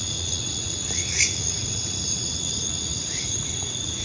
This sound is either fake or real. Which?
fake